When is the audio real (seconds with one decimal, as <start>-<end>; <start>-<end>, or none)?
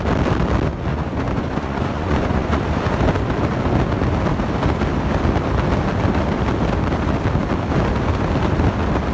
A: 0.0-0.9; 2.6-9.1